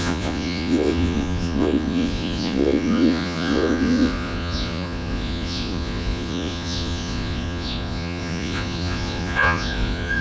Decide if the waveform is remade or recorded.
remade